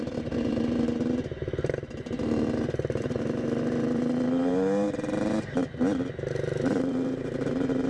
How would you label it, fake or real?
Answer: fake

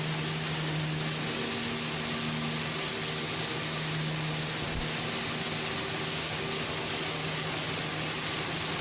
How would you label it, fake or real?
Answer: real